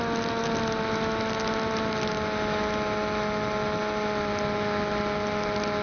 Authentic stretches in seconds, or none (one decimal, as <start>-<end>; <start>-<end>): 0.0-5.8